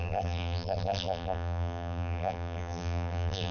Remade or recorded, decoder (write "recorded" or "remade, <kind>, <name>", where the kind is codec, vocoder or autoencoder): remade, vocoder, BigVGAN v2